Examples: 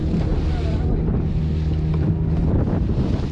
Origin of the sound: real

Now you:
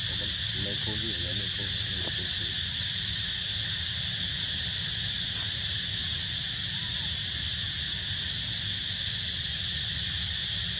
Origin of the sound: real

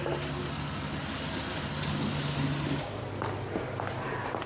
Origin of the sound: real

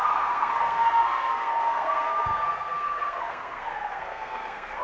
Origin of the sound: fake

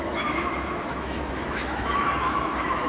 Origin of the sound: fake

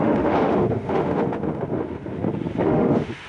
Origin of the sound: fake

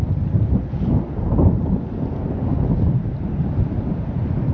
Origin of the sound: real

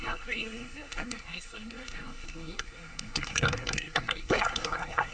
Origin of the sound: fake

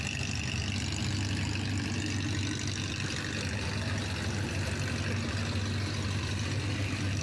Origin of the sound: real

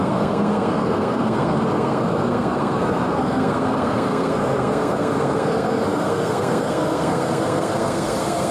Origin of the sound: fake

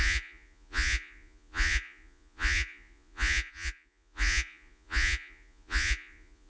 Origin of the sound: fake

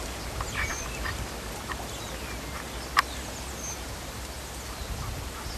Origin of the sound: real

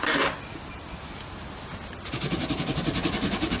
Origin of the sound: real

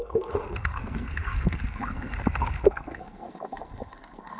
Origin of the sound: fake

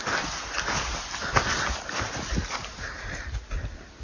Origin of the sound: real